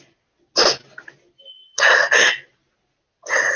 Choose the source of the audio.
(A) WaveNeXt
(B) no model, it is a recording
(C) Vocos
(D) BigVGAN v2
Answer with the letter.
B